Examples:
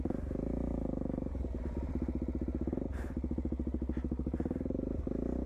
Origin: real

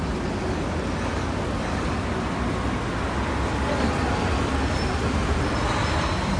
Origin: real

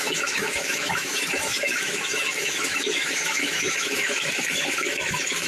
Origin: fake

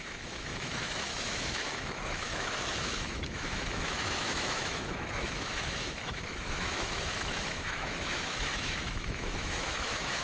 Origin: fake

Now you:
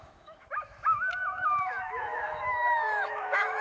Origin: fake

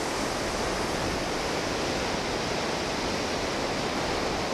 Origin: real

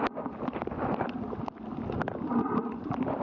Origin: real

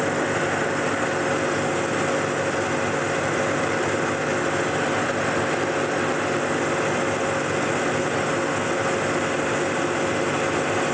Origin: real